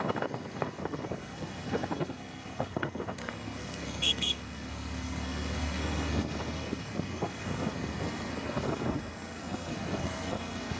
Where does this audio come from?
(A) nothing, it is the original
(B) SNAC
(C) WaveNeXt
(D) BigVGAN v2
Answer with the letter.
B